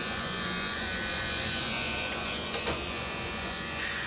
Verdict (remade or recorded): remade